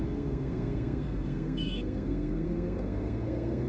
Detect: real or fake fake